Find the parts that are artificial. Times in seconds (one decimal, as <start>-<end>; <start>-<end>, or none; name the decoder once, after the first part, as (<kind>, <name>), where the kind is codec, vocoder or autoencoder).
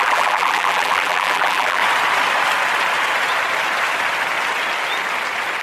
0.0-1.8 (vocoder, BigVGAN v2)